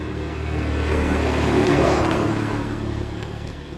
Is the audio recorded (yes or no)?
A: no